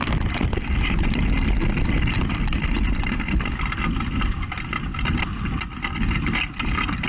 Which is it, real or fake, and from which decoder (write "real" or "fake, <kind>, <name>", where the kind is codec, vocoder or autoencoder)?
real